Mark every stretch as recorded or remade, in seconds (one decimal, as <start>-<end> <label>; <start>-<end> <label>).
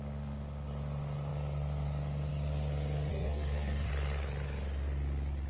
0.0-3.1 recorded; 3.1-3.9 remade; 3.9-5.5 recorded